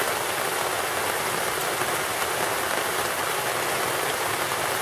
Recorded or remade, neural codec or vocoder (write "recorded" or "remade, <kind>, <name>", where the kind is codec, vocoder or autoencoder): recorded